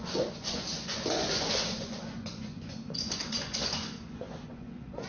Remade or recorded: remade